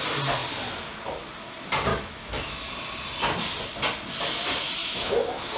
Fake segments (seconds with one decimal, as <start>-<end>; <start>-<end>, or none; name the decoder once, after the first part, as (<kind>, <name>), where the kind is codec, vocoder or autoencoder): 1.9-2.7 (autoencoder, DAC-VAE); 4.8-5.6